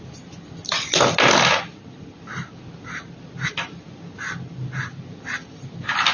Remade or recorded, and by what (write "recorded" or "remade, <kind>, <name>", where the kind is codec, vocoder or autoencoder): recorded